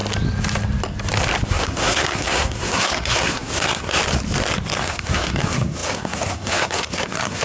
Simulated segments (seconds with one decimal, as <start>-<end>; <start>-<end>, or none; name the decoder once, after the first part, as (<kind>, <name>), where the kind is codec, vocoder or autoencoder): 1.5-4.0 (codec, SNAC); 4.8-7.4

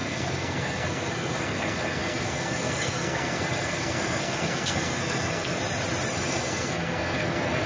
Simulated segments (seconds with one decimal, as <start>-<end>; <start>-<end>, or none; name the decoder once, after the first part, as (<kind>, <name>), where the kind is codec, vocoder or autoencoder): 0.0-5.6 (codec, SNAC); 6.3-7.7

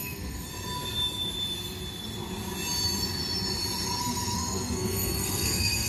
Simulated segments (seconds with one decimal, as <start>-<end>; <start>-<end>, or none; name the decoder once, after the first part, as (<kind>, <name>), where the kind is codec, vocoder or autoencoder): 0.0-0.5 (codec, SNAC); 4.0-5.9

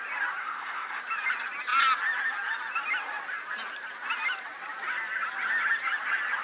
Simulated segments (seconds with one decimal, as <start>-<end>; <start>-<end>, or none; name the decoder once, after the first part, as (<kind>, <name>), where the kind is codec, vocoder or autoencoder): 0.4-1.0 (codec, SNAC)

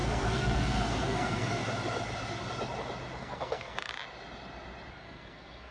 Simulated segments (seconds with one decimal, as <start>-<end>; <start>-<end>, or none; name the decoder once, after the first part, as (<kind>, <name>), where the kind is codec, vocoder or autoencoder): 0.0-1.6 (codec, SNAC); 3.2-3.9; 4.9-5.7